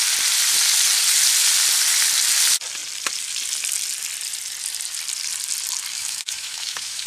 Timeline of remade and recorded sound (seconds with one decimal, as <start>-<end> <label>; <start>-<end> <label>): 0.0-5.9 recorded; 5.9-7.1 remade